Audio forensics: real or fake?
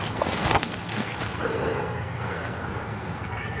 fake